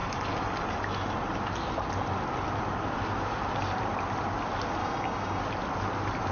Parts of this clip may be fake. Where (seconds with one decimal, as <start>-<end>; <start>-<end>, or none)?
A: 4.8-5.4